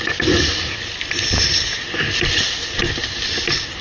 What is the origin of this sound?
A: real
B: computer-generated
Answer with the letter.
A